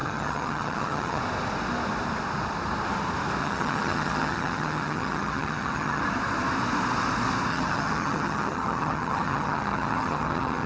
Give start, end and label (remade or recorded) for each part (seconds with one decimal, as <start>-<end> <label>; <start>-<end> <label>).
0.0-1.2 remade; 1.2-3.4 recorded; 3.4-6.0 remade; 6.0-7.5 recorded; 7.5-10.7 remade